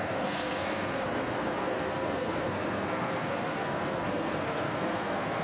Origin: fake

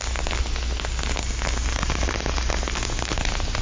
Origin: real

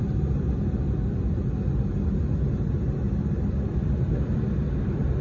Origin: real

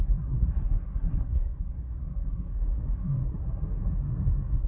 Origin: fake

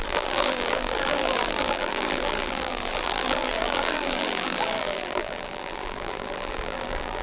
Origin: fake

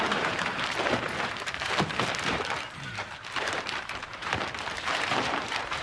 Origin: fake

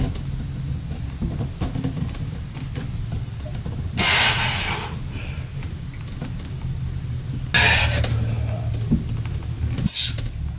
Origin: real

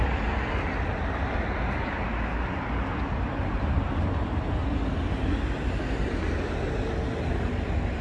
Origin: real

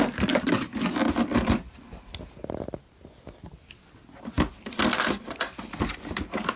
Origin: real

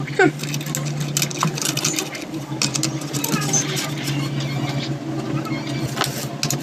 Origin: real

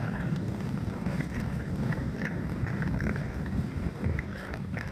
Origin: fake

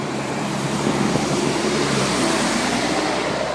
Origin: fake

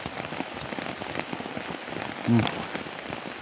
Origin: real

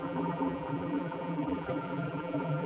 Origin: fake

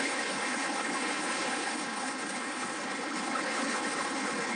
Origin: fake